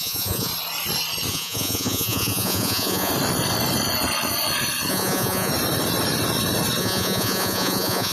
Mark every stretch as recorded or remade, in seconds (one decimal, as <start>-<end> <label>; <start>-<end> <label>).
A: 0.0-0.5 remade; 0.5-1.3 recorded; 1.3-3.1 remade; 3.1-4.9 recorded; 4.9-5.5 remade; 5.5-6.8 recorded; 6.8-8.1 remade